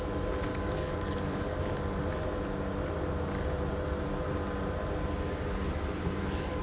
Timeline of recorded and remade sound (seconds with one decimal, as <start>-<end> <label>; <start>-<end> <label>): 0.0-0.5 recorded; 0.5-2.0 remade; 2.0-6.6 recorded